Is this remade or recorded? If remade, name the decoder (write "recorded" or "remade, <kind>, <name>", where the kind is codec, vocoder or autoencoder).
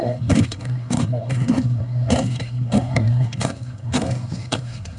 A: remade, codec, SNAC